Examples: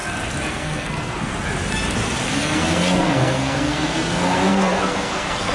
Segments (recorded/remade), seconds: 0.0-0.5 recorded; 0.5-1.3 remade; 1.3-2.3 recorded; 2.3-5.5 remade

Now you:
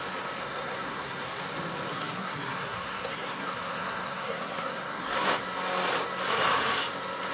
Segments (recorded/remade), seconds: 0.0-0.4 recorded; 0.4-1.4 remade; 1.4-1.9 recorded; 1.9-5.4 remade; 5.4-7.3 recorded

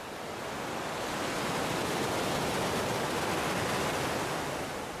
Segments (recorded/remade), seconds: 0.0-5.0 recorded